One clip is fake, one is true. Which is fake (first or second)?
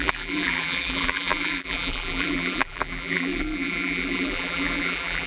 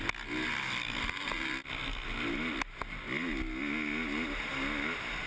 first